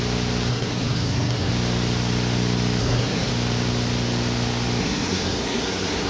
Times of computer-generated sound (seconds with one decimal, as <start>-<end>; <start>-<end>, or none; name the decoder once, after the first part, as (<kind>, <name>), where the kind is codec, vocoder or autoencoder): 0.5-1.5 (codec, SNAC); 2.8-3.3; 4.8-6.1